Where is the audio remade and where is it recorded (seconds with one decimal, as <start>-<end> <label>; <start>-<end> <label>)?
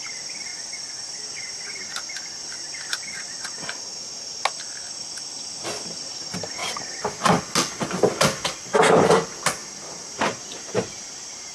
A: 0.0-6.6 recorded; 6.6-7.4 remade; 7.4-9.6 recorded; 9.6-11.5 remade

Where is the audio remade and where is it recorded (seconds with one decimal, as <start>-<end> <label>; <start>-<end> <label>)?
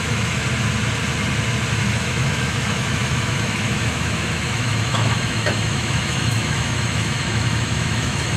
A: 0.0-0.4 remade; 0.4-1.8 recorded; 1.8-8.4 remade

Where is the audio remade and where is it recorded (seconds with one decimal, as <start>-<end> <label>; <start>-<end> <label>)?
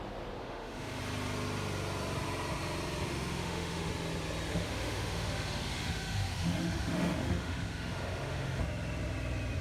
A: 0.0-0.4 recorded; 0.4-1.0 remade; 1.0-3.1 recorded; 3.1-3.9 remade; 3.9-4.5 recorded; 4.5-8.6 remade; 8.6-9.6 recorded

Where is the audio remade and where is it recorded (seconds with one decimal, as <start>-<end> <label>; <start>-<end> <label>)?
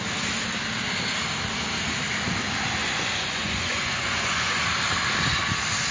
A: 0.0-2.8 recorded; 2.8-4.6 remade; 4.6-5.9 recorded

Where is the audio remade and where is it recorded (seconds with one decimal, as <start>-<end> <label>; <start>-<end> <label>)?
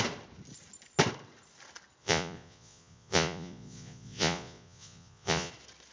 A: 0.0-2.0 recorded; 2.0-5.5 remade; 5.5-5.9 recorded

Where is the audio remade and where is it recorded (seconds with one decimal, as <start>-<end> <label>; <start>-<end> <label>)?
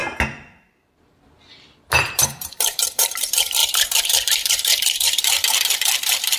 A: 0.0-2.1 recorded; 2.1-6.4 remade